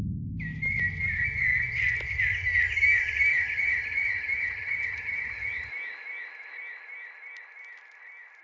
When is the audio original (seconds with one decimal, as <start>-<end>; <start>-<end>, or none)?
0.0-3.3; 5.7-8.4